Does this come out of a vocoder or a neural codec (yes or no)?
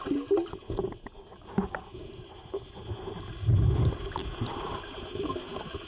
no